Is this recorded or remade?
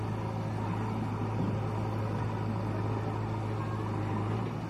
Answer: recorded